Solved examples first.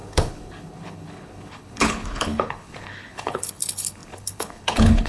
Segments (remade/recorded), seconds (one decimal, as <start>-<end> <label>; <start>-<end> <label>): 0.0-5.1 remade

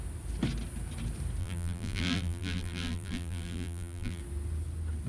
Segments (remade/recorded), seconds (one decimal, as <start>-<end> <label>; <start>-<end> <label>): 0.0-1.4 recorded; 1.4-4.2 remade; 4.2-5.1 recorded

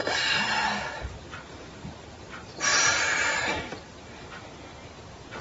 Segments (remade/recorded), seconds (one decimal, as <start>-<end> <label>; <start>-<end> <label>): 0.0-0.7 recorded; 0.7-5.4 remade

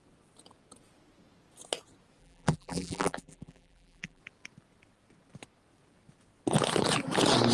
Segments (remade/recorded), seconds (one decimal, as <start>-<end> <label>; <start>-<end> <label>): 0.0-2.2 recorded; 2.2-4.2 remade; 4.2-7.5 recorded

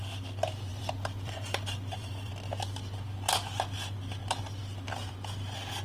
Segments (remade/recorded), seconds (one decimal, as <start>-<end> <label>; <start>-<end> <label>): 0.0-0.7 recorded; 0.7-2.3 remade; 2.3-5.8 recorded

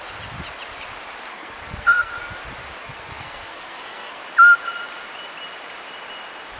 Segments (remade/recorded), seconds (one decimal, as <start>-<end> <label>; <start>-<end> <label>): 0.0-1.3 recorded; 1.3-2.1 remade; 2.1-2.8 recorded; 2.8-4.2 remade; 4.2-6.6 recorded

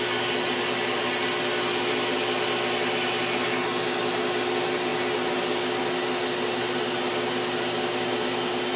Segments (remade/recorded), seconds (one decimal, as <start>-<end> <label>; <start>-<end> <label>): 0.0-8.8 recorded

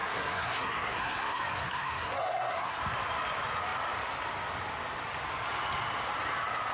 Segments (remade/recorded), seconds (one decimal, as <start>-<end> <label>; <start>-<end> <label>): 0.0-2.8 remade; 2.8-6.7 recorded